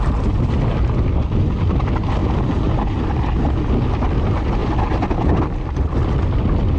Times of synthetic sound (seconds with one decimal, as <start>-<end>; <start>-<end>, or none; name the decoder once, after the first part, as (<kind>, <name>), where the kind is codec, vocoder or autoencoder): none